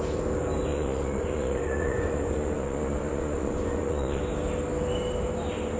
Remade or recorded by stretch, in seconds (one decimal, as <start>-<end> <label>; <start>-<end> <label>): 0.0-0.7 recorded; 0.7-4.2 remade; 4.2-5.8 recorded